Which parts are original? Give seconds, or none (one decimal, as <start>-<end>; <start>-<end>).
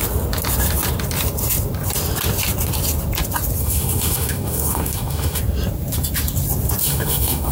0.0-3.6; 5.4-6.8